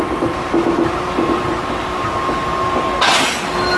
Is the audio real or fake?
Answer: real